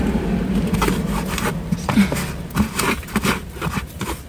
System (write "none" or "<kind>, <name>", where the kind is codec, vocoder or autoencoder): none